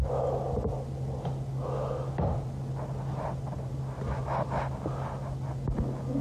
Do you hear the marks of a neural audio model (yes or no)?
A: no